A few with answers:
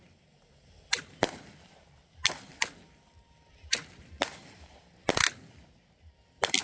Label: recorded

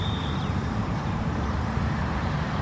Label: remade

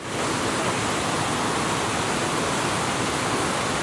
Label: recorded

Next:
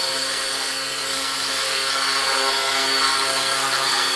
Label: remade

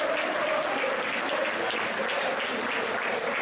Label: recorded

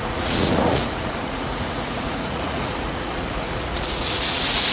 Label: remade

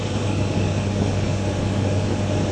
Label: remade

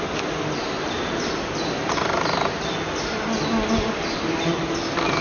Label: recorded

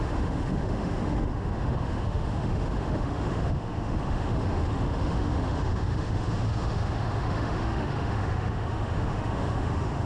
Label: remade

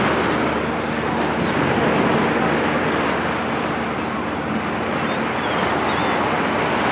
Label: recorded